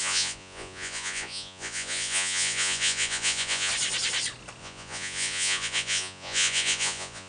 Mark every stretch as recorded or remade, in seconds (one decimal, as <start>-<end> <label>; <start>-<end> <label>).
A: 0.0-3.7 remade; 3.7-4.6 recorded; 4.6-7.3 remade